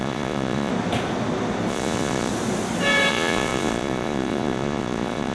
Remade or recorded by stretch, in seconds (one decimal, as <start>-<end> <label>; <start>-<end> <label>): 0.0-0.7 remade; 0.7-1.7 recorded; 1.7-2.3 remade; 2.3-3.1 recorded; 3.1-5.3 remade